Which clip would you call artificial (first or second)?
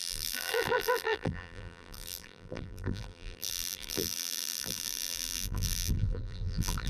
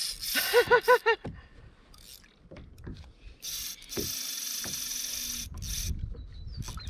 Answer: first